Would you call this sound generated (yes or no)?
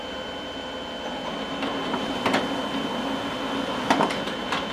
no